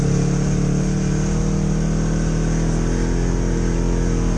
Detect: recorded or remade recorded